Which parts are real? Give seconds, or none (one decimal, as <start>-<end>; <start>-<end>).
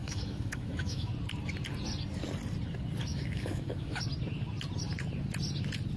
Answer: 1.1-3.1; 4.0-6.0